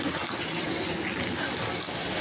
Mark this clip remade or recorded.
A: recorded